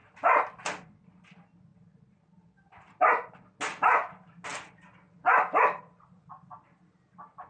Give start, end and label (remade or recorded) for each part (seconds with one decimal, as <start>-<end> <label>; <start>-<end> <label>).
0.0-7.5 recorded